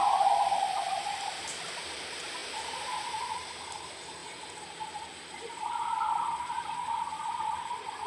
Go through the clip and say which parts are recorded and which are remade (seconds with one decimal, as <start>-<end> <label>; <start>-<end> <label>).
0.0-2.4 remade; 2.4-3.2 recorded; 3.2-4.2 remade; 4.2-5.5 recorded; 5.5-8.1 remade